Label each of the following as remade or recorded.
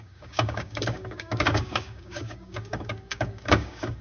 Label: remade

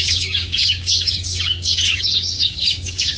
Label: remade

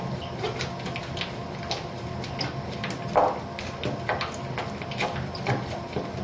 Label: recorded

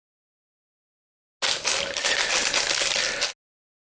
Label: recorded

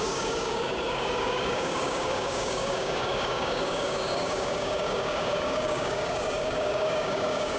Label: remade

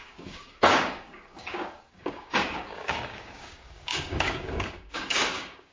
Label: remade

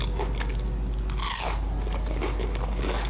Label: recorded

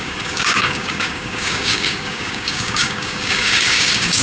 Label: remade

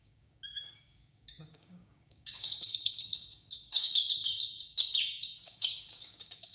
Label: remade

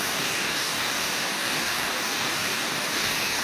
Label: remade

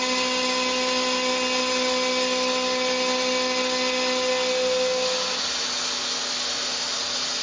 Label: recorded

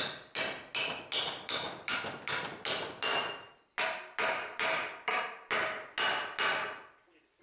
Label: recorded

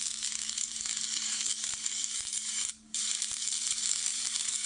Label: remade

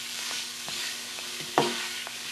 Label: remade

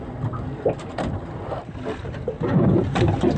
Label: recorded